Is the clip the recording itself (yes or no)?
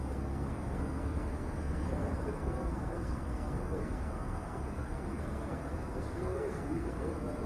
no